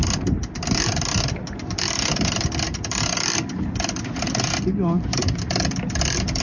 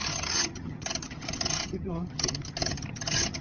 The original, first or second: first